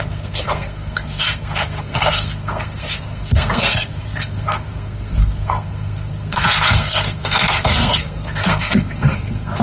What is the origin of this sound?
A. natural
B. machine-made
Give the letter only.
B